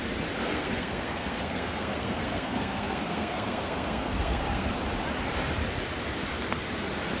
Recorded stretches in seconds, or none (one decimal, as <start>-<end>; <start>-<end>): 0.0-0.4; 4.7-7.2